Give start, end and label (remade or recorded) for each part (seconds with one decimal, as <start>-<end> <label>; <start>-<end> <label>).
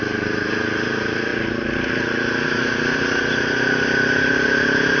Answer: 0.0-5.0 recorded